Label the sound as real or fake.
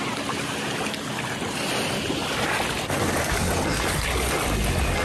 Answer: real